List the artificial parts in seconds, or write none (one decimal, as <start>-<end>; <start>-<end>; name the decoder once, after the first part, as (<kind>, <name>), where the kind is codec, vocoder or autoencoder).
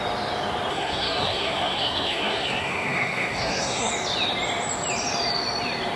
0.7-3.9 (codec, SNAC)